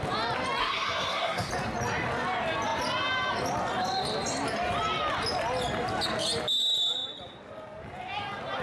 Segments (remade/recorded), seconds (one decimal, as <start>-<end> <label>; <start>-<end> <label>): 0.0-0.6 recorded; 0.6-1.5 remade; 1.5-8.6 recorded